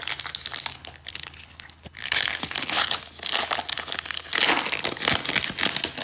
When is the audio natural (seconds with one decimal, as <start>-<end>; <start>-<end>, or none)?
0.0-0.7; 3.0-6.0